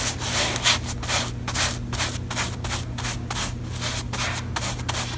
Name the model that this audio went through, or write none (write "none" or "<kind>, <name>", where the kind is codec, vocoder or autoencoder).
none